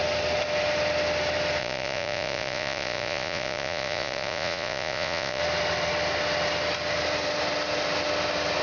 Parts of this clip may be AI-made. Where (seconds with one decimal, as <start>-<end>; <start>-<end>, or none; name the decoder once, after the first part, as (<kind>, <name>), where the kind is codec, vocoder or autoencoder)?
1.6-5.4 (vocoder, Vocos)